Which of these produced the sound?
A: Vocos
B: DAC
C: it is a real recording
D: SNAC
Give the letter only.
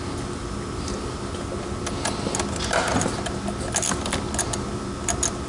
C